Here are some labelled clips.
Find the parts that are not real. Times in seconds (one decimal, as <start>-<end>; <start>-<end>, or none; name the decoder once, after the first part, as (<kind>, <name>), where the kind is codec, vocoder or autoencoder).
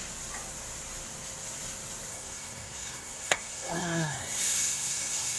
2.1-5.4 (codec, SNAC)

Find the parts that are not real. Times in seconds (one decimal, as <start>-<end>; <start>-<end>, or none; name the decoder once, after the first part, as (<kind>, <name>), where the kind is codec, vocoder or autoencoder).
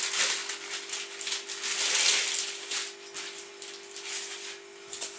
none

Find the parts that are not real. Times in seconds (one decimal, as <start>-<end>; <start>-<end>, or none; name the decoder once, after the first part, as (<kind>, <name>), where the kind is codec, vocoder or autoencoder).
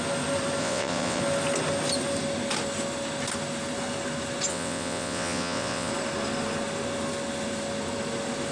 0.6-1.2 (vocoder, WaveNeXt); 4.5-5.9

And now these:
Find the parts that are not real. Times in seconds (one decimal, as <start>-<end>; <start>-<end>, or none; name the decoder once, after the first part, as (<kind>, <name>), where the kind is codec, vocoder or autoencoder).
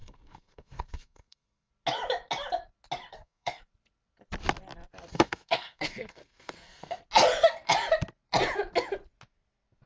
0.0-1.7 (codec, SNAC); 3.1-3.6; 5.1-7.0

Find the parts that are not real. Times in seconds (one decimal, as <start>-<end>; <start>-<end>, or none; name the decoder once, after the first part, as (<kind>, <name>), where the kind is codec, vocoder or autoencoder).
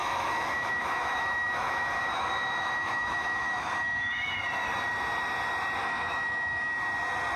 0.0-4.4 (autoencoder, DAC-VAE); 5.8-6.7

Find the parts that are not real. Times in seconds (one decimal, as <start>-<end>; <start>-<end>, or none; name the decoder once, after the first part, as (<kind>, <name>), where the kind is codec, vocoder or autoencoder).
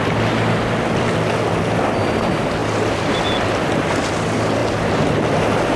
none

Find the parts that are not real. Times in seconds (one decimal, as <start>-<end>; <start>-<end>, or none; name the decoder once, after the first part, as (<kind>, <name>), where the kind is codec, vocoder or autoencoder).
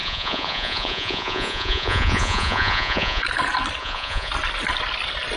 0.0-3.2 (vocoder, Vocos); 3.8-4.3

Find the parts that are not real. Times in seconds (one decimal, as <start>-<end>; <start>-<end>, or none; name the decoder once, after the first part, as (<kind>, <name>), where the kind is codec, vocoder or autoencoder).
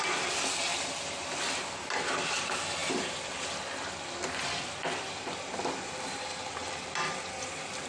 none